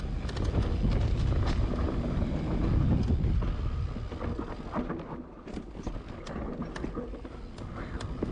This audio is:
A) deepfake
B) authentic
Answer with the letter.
B